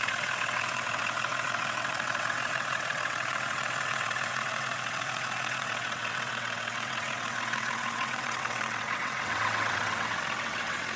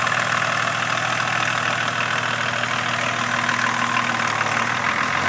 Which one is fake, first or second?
first